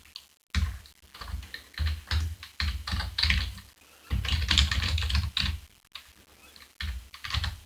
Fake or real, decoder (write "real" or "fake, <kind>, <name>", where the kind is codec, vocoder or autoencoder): real